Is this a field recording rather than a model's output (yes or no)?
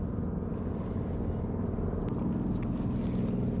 yes